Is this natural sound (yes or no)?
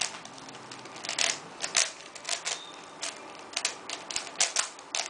yes